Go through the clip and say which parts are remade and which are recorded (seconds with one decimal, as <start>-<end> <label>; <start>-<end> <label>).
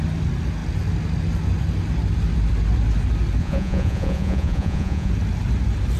0.0-3.4 recorded; 3.4-5.1 remade; 5.1-6.0 recorded